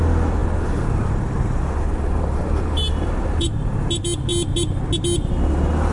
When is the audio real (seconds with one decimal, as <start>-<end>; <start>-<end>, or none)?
0.0-0.4; 3.9-5.9

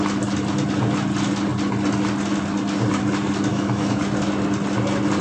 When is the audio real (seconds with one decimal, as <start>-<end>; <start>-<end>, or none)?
0.0-3.5; 4.0-5.2

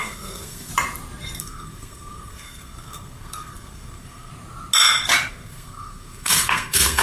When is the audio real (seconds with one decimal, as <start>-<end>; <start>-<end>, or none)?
0.7-1.4; 4.3-5.3